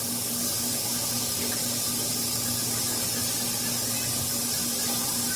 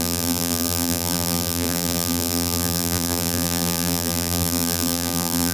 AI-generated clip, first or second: second